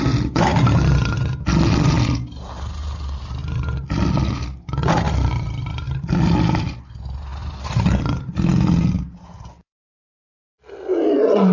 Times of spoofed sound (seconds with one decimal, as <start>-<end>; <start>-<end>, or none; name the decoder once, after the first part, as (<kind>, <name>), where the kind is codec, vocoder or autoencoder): none